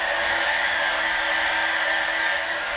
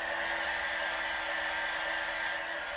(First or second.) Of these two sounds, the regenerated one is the first